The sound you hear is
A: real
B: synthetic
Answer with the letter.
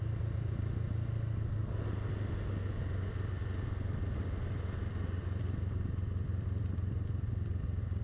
A